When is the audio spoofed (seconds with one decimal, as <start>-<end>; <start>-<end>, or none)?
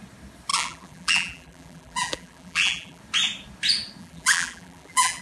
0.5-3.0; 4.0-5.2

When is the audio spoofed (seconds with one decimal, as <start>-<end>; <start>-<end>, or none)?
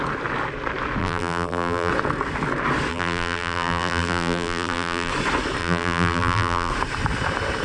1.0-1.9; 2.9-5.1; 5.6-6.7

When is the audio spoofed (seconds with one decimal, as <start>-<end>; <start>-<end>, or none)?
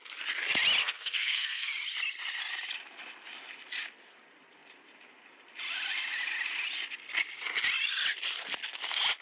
0.8-1.7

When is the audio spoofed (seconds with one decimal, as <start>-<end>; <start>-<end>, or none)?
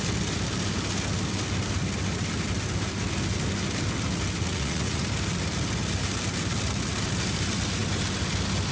4.4-5.0